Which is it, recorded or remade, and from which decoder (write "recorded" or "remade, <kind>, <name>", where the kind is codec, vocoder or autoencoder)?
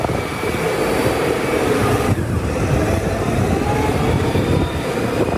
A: remade, vocoder, BigVGAN v2